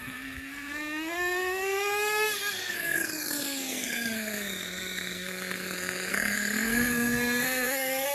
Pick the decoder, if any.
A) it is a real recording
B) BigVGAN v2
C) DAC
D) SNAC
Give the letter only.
D